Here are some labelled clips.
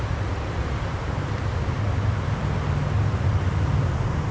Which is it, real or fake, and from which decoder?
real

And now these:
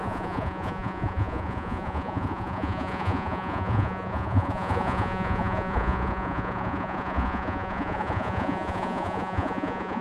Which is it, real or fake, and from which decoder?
fake, vocoder, Vocos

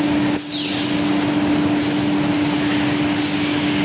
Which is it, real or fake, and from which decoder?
real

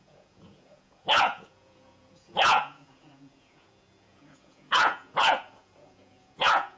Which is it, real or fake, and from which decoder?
fake, vocoder, Vocos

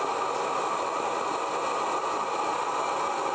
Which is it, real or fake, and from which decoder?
real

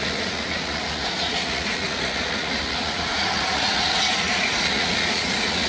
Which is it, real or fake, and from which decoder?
fake, vocoder, Vocos